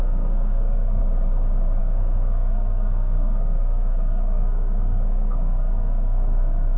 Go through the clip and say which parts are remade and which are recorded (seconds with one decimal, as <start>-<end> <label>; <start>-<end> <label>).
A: 0.0-1.0 remade; 1.0-1.8 recorded; 1.8-6.8 remade